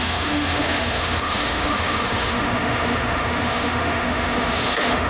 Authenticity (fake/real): fake